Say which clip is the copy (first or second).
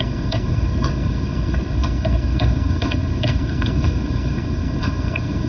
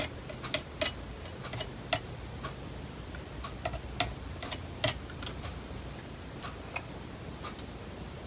first